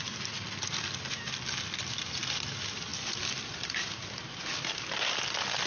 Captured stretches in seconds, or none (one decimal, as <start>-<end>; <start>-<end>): 0.0-5.7